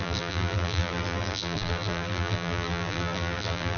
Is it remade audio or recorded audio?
remade